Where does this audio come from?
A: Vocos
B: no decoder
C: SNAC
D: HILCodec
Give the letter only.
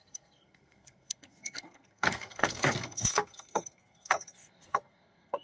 C